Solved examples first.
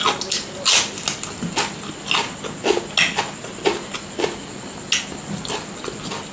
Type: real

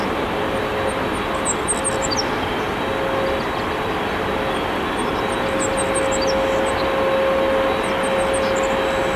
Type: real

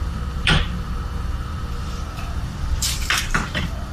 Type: fake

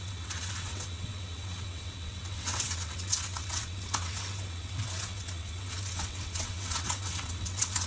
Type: fake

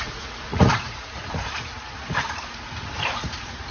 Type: fake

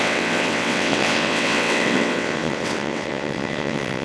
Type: fake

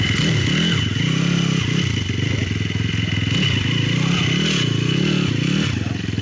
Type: real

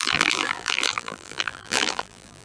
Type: fake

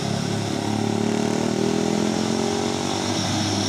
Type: real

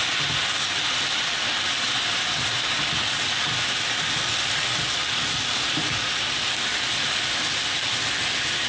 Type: real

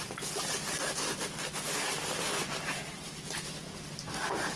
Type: real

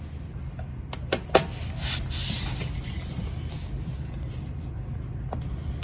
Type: real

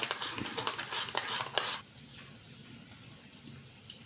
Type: real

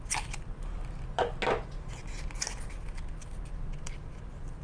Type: real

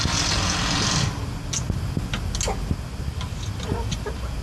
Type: real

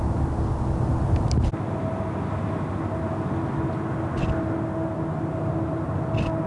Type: real